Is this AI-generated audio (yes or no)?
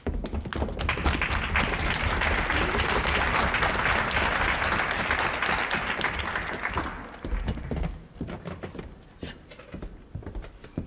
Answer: no